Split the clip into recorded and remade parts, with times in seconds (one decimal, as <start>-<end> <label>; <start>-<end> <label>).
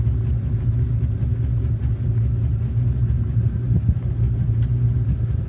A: 0.0-5.5 recorded